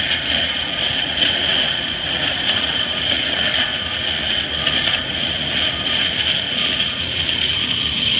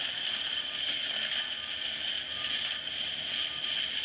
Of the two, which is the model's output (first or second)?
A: first